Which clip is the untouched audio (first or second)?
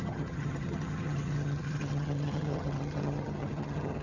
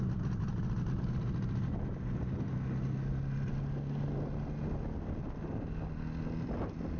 second